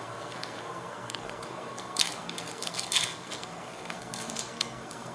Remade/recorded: remade